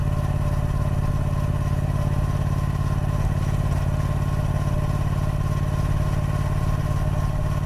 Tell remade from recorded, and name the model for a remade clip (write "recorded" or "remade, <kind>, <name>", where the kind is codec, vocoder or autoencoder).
recorded